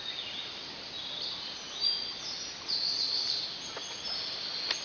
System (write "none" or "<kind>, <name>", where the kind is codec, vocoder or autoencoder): none